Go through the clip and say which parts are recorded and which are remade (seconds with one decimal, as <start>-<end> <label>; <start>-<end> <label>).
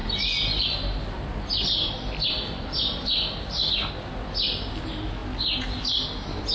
0.0-6.5 recorded